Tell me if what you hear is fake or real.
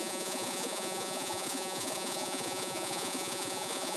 fake